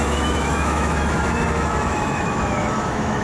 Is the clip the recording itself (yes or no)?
no